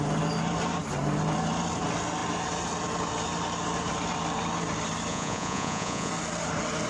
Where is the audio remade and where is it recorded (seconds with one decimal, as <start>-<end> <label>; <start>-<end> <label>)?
0.0-5.1 recorded; 5.1-6.1 remade; 6.1-6.9 recorded

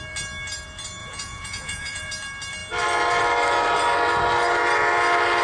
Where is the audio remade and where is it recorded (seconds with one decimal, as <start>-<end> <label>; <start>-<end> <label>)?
0.0-1.0 recorded; 1.0-2.1 remade; 2.1-5.4 recorded

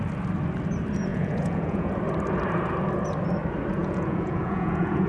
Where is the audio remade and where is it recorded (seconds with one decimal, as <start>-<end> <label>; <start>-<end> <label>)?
0.0-1.1 recorded; 1.1-1.9 remade; 1.9-3.8 recorded; 3.8-5.1 remade

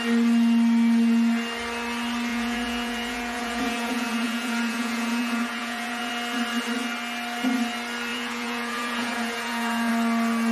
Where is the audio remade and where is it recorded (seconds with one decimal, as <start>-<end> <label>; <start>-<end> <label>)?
0.0-2.3 recorded; 2.3-6.1 remade; 6.1-8.1 recorded; 8.1-9.9 remade; 9.9-10.5 recorded

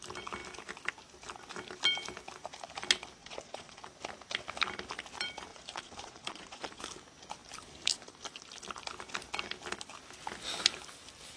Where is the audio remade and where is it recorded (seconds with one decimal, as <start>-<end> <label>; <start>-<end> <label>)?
0.0-3.2 recorded; 3.2-3.8 remade; 3.8-5.5 recorded; 5.5-6.8 remade; 6.8-11.4 recorded

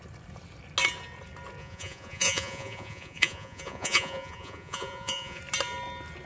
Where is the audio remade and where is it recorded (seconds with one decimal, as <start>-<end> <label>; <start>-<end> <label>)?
0.0-1.6 recorded; 1.6-5.4 remade; 5.4-6.3 recorded

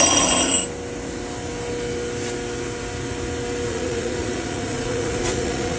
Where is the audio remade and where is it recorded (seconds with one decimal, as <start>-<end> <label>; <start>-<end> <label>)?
0.0-3.7 recorded; 3.7-5.8 remade

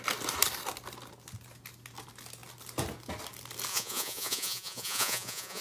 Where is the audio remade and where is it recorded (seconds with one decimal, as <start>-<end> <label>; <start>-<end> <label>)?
0.0-3.7 recorded; 3.7-5.6 remade